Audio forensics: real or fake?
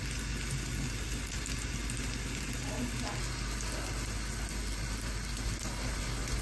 real